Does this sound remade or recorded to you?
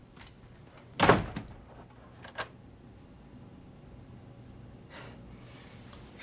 recorded